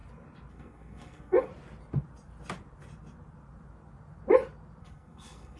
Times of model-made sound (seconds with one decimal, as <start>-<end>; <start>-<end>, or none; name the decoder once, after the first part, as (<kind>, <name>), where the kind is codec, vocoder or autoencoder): 0.5-1.5 (codec, SNAC); 4.8-5.6